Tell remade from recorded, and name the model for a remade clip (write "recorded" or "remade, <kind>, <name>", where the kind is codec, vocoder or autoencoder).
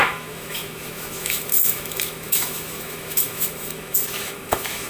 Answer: remade, autoencoder, DAC-VAE